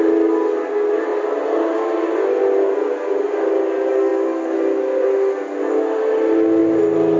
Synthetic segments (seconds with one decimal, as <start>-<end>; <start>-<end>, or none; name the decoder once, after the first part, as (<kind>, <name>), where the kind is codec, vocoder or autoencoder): none